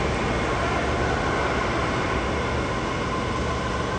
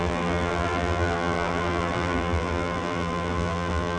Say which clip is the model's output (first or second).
second